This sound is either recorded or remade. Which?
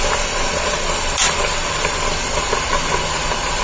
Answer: recorded